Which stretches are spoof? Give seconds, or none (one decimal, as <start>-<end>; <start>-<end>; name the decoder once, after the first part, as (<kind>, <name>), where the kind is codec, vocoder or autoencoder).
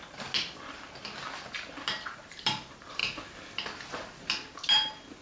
none